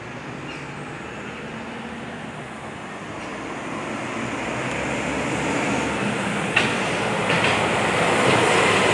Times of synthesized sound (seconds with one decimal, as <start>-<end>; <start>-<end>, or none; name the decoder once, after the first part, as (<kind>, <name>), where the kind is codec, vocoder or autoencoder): none